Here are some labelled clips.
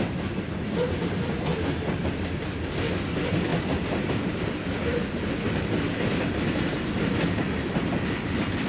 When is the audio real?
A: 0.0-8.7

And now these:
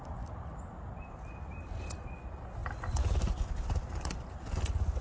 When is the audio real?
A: 0.0-5.0